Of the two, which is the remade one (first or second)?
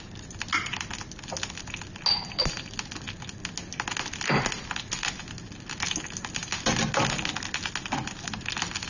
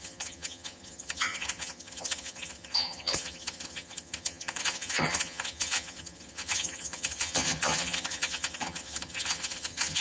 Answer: second